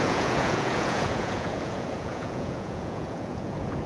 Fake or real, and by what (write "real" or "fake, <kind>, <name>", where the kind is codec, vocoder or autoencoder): fake, vocoder, Vocos